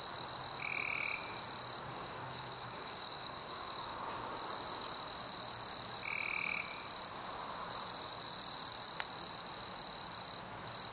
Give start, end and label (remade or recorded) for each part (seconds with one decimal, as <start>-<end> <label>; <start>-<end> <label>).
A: 0.0-1.9 recorded; 1.9-4.0 remade; 4.0-10.9 recorded